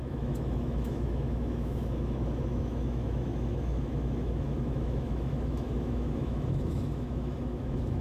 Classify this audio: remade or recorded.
remade